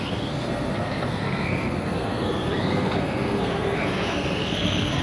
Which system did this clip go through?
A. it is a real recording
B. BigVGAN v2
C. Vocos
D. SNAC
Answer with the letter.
D